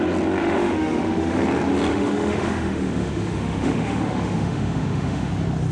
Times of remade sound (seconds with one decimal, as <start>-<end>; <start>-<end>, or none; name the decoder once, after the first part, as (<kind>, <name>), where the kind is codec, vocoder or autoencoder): 0.4-1.4 (autoencoder, DAC-VAE); 1.9-5.3